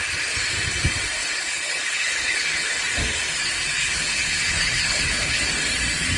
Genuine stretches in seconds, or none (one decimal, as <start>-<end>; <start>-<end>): 0.0-1.2; 2.8-3.8; 5.4-6.2